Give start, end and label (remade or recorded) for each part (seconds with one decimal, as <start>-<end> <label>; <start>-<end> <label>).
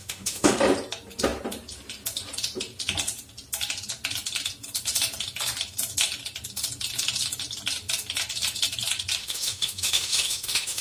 0.0-0.6 remade; 0.6-9.2 recorded; 9.2-10.8 remade